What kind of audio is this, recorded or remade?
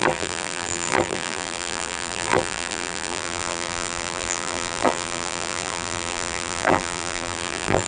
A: remade